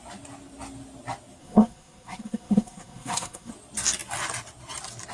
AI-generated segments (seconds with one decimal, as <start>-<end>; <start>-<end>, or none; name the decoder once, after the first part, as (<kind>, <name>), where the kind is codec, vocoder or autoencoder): 1.4-3.5 (codec, SNAC)